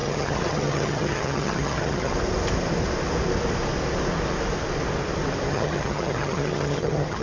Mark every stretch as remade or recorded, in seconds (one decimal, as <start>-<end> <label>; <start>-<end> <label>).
0.0-2.1 remade; 2.1-5.5 recorded; 5.5-7.2 remade